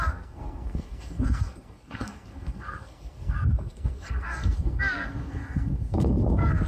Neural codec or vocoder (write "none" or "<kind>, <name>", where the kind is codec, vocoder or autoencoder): codec, SNAC